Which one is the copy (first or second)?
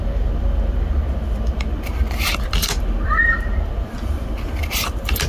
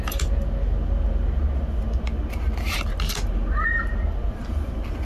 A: first